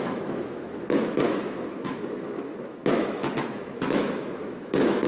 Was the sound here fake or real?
fake